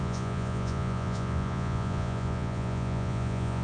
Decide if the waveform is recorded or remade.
remade